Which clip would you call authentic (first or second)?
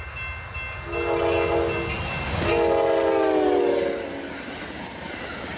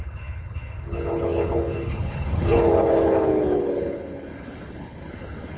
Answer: first